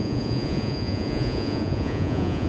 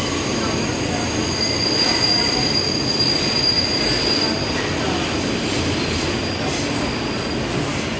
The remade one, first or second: first